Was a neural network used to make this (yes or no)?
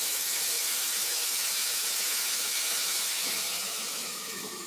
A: yes